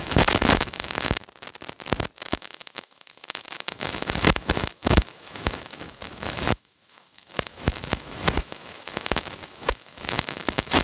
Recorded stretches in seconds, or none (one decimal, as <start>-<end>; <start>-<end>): 1.2-2.3